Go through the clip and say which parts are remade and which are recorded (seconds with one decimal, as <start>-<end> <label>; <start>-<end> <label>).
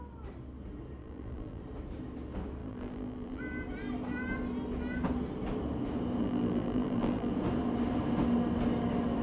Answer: 0.0-1.0 recorded; 1.0-1.6 remade; 1.6-2.6 recorded; 2.6-3.4 remade; 3.4-6.2 recorded; 6.2-7.3 remade; 7.3-9.2 recorded